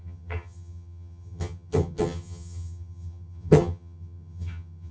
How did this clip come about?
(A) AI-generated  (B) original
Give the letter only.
A